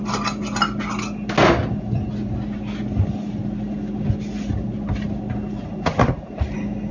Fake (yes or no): no